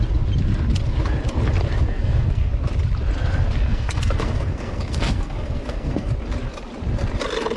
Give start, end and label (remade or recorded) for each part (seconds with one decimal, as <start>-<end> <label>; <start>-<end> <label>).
0.0-1.9 recorded; 1.9-2.5 remade; 2.5-3.7 recorded; 3.7-6.1 remade; 6.1-7.6 recorded